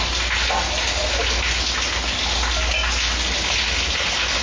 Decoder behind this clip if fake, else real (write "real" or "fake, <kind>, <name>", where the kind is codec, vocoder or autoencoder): real